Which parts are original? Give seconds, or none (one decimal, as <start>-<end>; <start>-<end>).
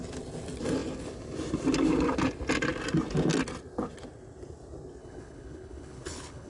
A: 0.0-5.0